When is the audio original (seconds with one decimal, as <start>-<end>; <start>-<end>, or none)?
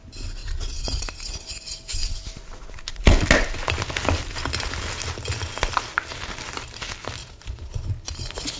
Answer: 0.0-0.4; 1.0-7.2; 7.8-8.6